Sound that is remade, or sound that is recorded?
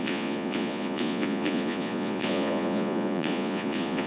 remade